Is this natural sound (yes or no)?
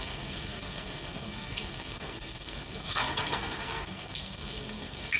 no